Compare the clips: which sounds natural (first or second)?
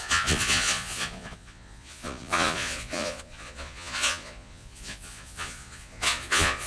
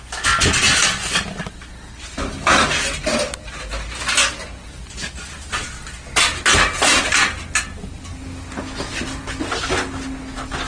second